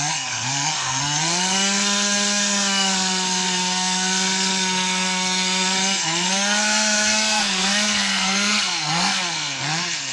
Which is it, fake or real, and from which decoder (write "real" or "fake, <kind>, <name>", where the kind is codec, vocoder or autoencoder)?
fake, codec, SNAC